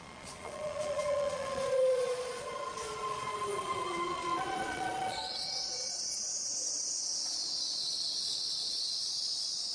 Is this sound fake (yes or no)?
yes